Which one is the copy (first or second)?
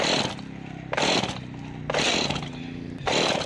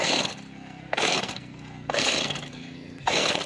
second